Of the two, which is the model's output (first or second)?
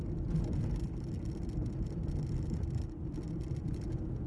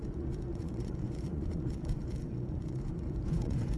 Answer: second